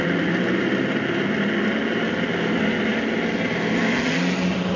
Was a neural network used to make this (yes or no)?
no